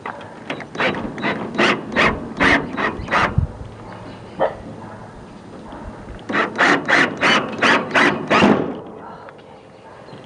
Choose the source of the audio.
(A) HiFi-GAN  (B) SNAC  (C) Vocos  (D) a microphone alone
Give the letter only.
D